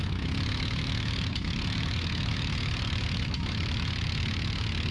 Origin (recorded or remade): remade